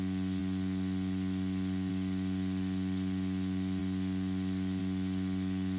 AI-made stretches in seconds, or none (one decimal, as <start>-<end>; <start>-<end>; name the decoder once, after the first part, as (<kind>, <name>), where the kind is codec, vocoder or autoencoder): none